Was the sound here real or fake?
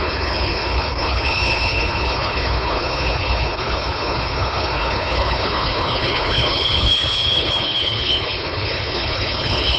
fake